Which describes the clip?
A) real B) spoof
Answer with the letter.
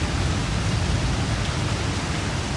A